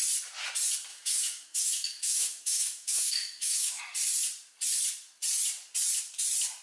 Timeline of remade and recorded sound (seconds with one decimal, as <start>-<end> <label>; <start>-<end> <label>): 0.0-0.9 recorded; 0.9-3.8 remade; 3.8-6.6 recorded